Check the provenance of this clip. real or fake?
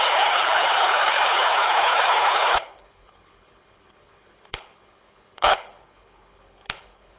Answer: fake